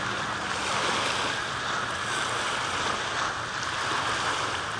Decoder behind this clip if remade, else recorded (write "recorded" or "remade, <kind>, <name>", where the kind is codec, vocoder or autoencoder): recorded